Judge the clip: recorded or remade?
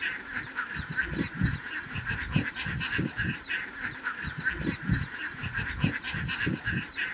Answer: recorded